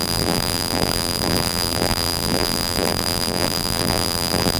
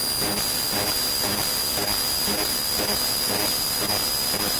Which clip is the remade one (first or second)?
first